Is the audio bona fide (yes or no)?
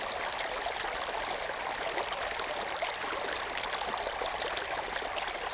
yes